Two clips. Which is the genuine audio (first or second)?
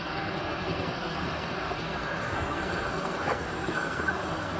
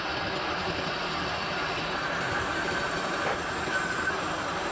second